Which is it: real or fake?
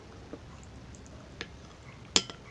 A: real